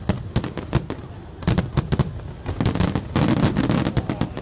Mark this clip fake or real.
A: real